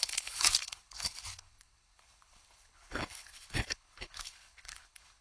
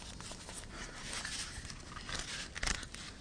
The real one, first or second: second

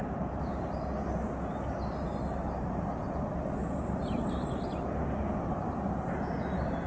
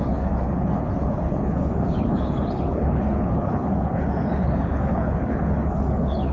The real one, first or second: first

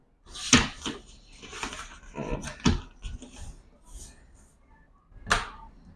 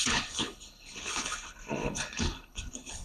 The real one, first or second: first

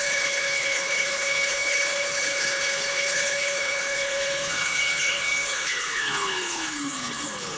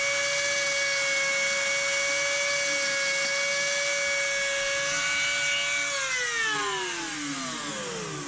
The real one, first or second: second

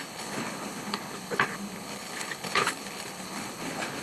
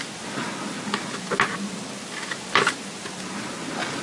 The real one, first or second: second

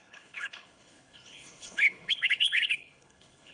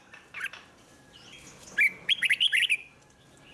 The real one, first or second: second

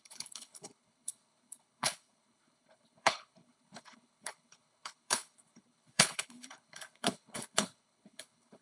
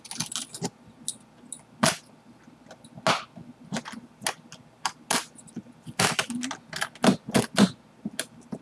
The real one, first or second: second